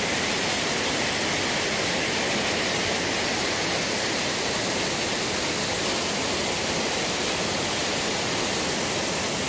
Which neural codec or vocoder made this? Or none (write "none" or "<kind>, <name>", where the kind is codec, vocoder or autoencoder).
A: none